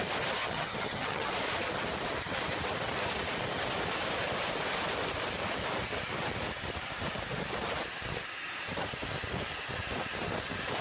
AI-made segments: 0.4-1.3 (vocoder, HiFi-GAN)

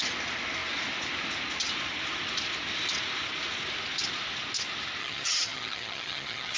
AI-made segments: 5.0-6.6 (vocoder, HiFi-GAN)

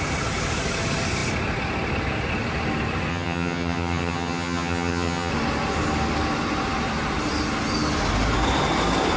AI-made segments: 3.1-5.3 (vocoder, HiFi-GAN)

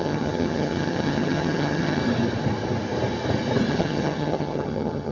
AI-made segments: 0.0-2.0 (vocoder, HiFi-GAN); 3.7-5.1

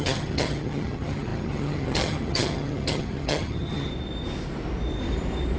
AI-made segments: 0.0-3.9 (vocoder, HiFi-GAN)

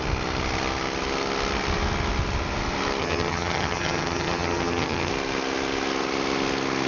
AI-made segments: 3.0-5.1 (vocoder, HiFi-GAN)

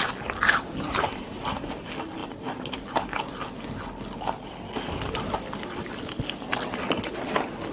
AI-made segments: none